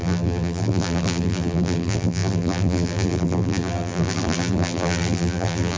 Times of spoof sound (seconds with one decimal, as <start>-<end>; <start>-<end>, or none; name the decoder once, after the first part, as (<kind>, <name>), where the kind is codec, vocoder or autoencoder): 0.0-5.8 (vocoder, BigVGAN v2)